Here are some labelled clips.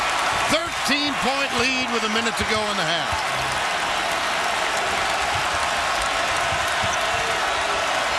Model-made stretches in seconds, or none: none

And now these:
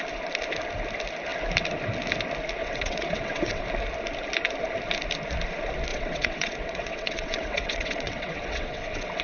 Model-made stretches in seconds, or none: 2.6-3.6 (vocoder, WaveNeXt); 5.9-9.2